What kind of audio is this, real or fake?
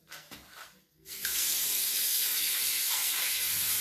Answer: fake